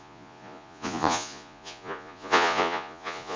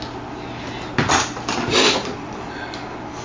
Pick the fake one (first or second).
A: first